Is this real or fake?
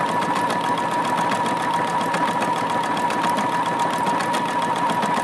real